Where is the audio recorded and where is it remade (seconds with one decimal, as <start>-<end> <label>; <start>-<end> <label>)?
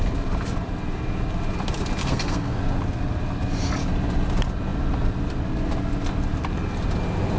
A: 0.0-2.0 recorded; 2.0-2.6 remade; 2.6-7.4 recorded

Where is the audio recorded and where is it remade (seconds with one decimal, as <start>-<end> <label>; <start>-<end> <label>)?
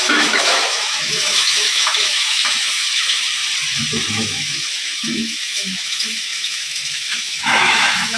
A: 0.0-3.4 remade; 3.4-4.1 recorded; 4.1-8.2 remade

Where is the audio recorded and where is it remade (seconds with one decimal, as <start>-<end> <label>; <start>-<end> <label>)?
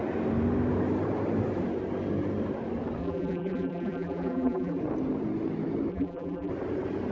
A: 0.0-3.0 recorded; 3.0-4.8 remade; 4.8-5.9 recorded; 5.9-6.5 remade; 6.5-7.1 recorded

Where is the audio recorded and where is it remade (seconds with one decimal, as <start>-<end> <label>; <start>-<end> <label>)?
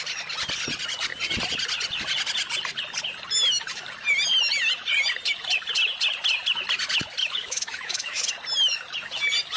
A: 0.0-7.2 recorded; 7.2-8.2 remade; 8.2-9.6 recorded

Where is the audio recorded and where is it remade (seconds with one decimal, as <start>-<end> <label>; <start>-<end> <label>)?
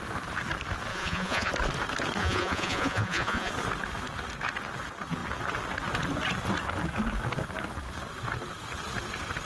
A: 0.0-0.9 recorded; 0.9-1.5 remade; 1.5-2.2 recorded; 2.2-3.5 remade; 3.5-9.5 recorded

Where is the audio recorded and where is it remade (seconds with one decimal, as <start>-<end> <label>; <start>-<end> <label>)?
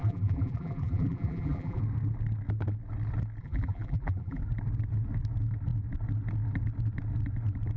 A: 0.0-1.8 remade; 1.8-3.4 recorded; 3.4-4.4 remade; 4.4-7.8 recorded